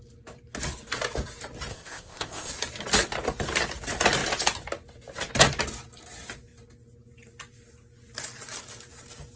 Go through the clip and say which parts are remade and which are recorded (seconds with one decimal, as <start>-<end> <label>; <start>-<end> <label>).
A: 0.0-1.7 recorded; 1.7-2.5 remade; 2.5-9.4 recorded